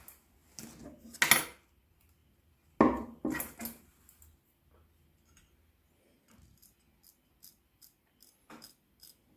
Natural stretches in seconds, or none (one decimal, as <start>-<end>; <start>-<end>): 0.0-9.4